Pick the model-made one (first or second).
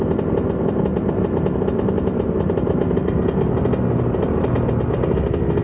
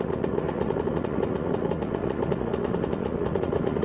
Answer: second